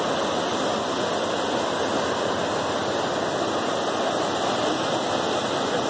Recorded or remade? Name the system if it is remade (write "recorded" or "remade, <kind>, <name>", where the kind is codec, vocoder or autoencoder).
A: recorded